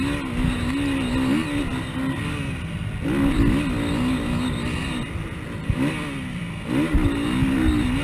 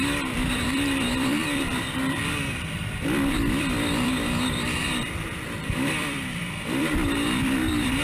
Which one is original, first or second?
first